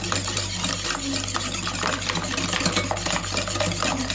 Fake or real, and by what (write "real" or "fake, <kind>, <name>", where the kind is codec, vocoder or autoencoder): real